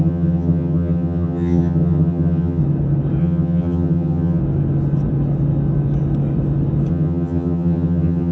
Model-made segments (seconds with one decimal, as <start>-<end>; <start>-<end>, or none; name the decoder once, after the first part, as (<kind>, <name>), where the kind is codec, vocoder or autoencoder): 0.0-2.6 (vocoder, HiFi-GAN); 3.2-4.4; 6.9-8.3